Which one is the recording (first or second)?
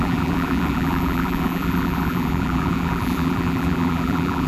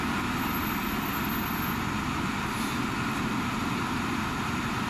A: second